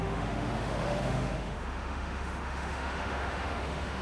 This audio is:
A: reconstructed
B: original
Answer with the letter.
A